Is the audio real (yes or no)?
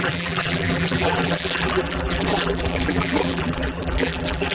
no